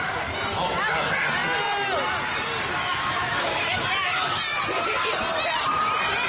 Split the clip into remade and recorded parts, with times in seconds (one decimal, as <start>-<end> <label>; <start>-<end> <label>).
0.0-2.7 recorded; 2.7-4.4 remade; 4.4-6.3 recorded